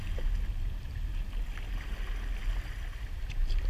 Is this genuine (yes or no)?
yes